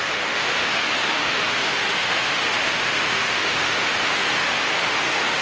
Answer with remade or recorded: remade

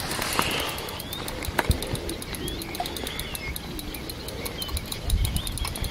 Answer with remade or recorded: recorded